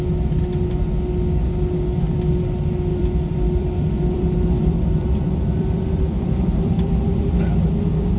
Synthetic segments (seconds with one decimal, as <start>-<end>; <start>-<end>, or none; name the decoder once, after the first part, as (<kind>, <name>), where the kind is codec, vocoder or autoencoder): 2.9-7.4 (vocoder, BigVGAN v2)